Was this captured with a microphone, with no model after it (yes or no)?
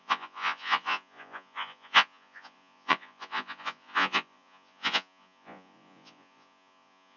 no